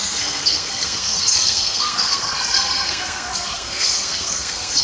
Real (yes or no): no